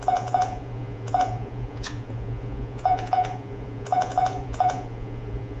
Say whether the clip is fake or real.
fake